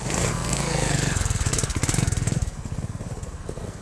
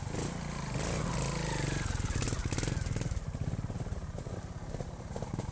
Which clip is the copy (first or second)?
first